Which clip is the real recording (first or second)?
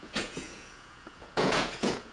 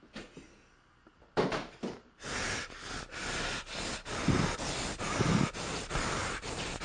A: second